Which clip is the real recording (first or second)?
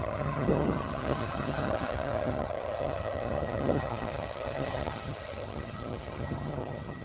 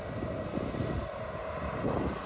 second